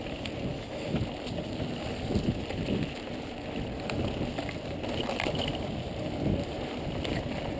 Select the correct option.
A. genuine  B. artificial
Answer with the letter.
A